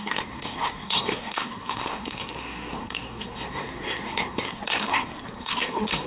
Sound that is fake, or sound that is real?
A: fake